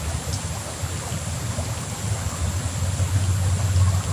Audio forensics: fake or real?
real